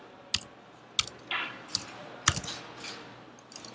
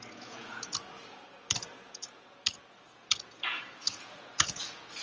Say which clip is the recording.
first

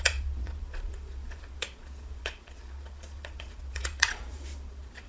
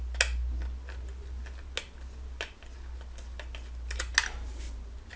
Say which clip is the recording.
second